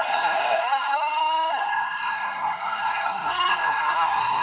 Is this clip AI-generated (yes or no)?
yes